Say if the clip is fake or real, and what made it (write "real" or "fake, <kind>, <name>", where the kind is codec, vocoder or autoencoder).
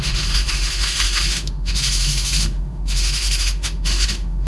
fake, autoencoder, DAC-VAE